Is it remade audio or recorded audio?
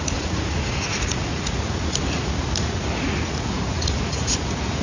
remade